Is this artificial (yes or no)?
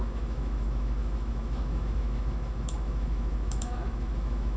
yes